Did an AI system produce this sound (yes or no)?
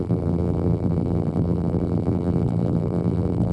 yes